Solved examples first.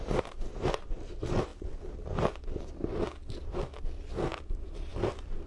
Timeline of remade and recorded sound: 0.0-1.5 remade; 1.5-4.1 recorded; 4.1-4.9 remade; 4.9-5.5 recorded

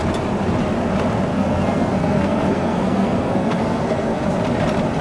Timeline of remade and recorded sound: 0.0-1.3 recorded; 1.3-4.3 remade; 4.3-5.0 recorded

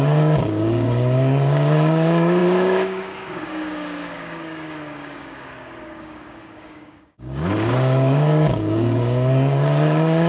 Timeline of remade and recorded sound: 0.0-10.3 remade

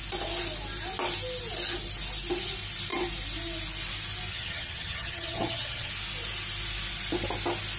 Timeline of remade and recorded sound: 0.0-4.3 recorded; 4.3-5.9 remade; 5.9-7.8 recorded

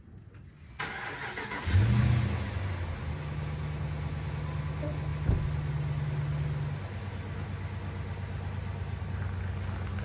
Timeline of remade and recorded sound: 0.0-10.0 recorded